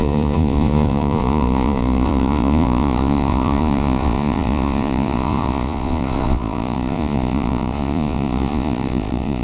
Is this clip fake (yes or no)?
yes